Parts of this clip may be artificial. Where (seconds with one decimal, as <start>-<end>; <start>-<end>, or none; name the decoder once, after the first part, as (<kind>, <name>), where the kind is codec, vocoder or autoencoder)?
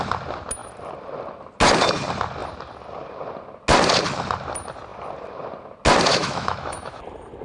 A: 6.1-7.0 (autoencoder, DAC-VAE)